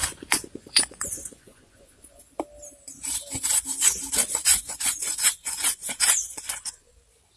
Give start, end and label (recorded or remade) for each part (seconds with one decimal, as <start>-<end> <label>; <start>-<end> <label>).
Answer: 0.0-2.2 remade; 2.2-4.5 recorded; 4.5-7.0 remade; 7.0-7.4 recorded